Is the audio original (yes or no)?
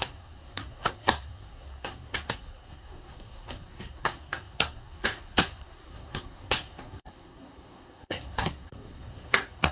no